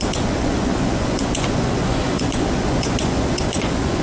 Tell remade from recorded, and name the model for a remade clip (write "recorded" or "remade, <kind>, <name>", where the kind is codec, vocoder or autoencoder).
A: remade, vocoder, Vocos